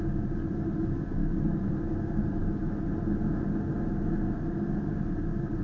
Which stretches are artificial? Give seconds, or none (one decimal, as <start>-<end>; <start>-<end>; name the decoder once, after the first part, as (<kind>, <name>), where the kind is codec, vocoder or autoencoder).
none